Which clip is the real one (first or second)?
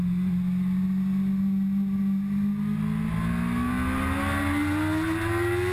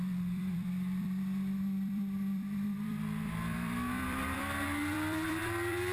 first